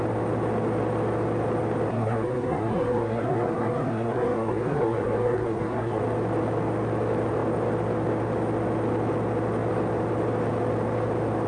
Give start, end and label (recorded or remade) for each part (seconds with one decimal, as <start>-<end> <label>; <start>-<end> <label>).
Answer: 0.0-1.9 recorded; 1.9-6.0 remade; 6.0-11.5 recorded